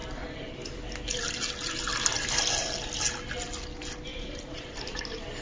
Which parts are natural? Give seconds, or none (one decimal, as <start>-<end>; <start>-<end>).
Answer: 0.7-4.1